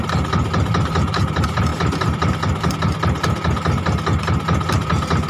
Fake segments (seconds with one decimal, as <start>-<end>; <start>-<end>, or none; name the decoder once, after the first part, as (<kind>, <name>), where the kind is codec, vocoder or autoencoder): none